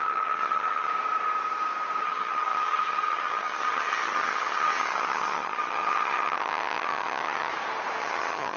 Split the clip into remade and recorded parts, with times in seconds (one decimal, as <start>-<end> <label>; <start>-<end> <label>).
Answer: 0.0-0.9 remade; 0.9-2.0 recorded; 2.0-7.5 remade; 7.5-8.0 recorded; 8.0-8.6 remade